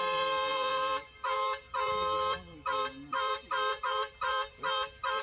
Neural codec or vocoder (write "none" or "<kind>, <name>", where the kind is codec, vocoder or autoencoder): vocoder, BigVGAN v2